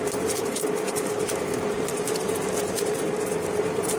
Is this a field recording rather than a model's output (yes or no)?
no